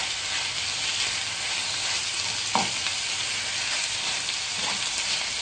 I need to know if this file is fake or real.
real